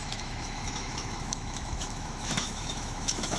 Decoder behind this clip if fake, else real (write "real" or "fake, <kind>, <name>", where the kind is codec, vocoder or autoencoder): fake, autoencoder, DAC-VAE